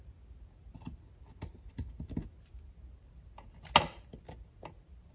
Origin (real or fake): real